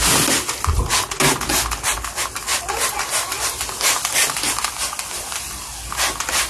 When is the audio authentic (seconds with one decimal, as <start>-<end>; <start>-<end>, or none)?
0.0-6.5